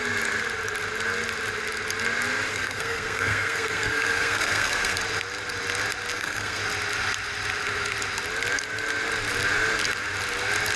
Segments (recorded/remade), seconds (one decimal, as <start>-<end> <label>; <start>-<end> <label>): 0.0-2.5 recorded; 2.5-5.0 remade; 5.0-6.1 recorded; 6.1-6.6 remade; 6.6-10.8 recorded

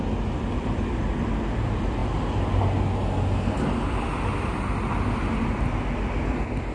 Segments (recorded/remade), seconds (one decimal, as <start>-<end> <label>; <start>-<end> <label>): 0.0-6.7 recorded

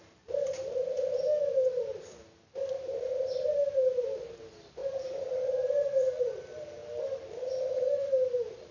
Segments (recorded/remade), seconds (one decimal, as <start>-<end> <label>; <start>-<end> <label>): 0.0-4.8 recorded; 4.8-6.3 remade; 6.3-8.7 recorded

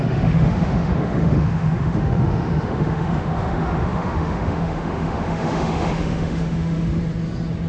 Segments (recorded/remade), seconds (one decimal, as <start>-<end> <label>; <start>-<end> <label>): 0.0-7.0 remade; 7.0-7.7 recorded

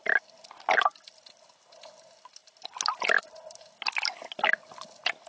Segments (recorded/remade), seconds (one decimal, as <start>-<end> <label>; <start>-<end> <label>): 0.0-5.3 recorded

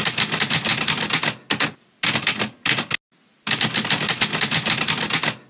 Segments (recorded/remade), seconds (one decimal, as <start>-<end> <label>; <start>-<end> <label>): 0.0-5.5 recorded

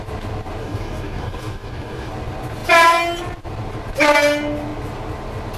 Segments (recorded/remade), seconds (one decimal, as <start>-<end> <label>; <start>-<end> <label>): 0.0-0.6 recorded; 0.6-2.1 remade; 2.1-5.6 recorded